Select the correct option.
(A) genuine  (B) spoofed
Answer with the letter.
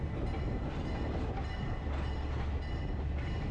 A